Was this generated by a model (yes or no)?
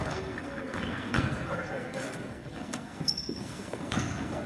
yes